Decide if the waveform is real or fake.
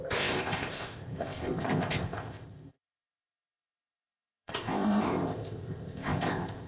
fake